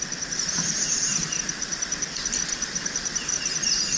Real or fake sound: fake